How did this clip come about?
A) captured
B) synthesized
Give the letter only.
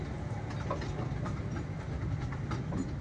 A